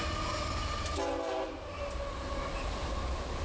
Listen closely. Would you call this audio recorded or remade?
recorded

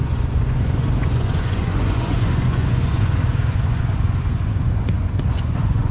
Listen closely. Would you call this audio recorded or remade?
remade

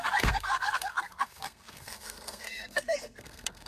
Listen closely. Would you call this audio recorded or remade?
remade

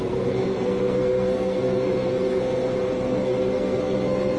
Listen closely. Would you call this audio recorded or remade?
remade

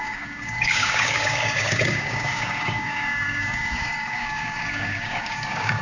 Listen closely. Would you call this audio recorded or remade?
remade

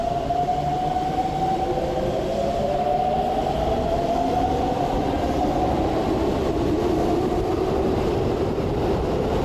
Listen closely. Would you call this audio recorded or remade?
recorded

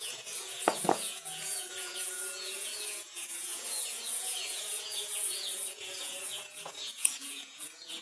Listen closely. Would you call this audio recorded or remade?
remade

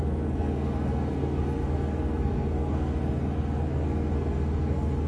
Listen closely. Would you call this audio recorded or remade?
remade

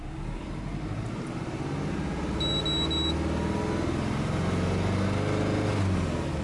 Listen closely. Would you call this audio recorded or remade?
recorded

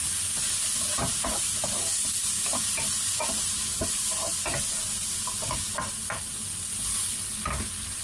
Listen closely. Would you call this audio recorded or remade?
recorded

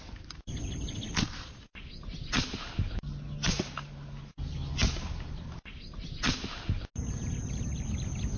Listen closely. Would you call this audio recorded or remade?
recorded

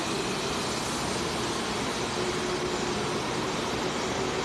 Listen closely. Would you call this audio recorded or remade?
recorded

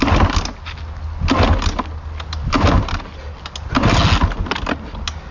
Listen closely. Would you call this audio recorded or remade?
recorded